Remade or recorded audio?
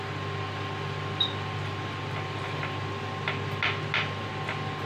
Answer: recorded